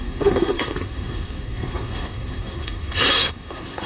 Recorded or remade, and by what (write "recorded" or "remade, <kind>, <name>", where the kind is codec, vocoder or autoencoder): remade, codec, SNAC